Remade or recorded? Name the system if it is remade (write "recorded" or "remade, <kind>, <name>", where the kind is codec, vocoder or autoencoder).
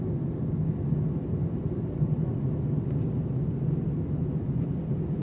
recorded